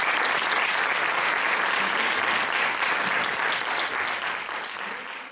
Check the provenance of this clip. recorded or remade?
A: recorded